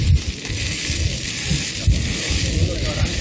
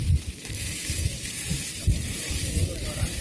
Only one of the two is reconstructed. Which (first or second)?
second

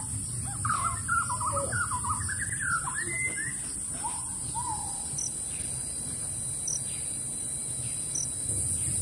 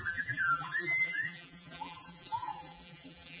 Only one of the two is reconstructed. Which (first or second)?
second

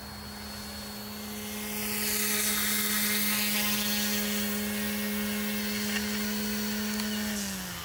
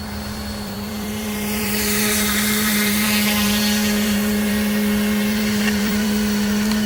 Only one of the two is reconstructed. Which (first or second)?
second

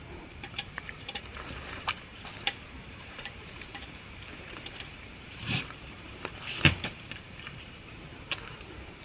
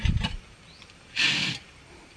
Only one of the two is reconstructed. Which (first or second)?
first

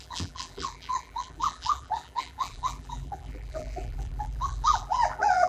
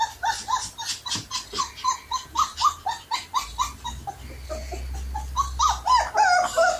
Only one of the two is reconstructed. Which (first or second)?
first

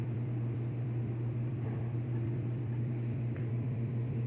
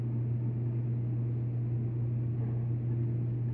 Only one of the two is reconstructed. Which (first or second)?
first